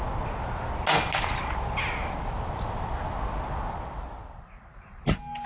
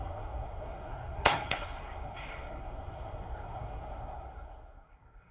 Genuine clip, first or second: first